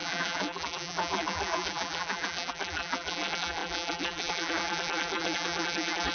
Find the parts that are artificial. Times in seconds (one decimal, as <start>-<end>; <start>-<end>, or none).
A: 0.0-6.1